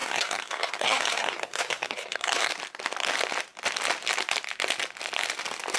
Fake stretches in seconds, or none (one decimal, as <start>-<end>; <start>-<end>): 0.0-2.5